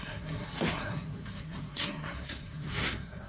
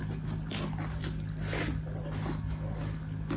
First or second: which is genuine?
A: second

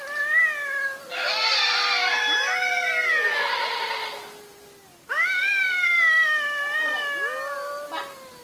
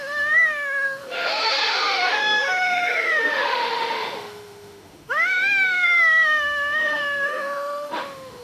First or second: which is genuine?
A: first